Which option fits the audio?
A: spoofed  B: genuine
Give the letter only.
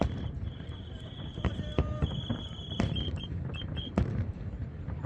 A